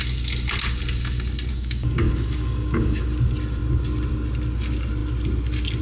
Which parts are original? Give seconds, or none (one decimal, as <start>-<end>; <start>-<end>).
0.0-1.5; 3.0-5.8